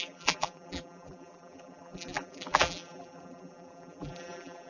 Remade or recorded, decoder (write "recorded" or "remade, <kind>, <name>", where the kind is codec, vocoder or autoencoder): remade, vocoder, BigVGAN v2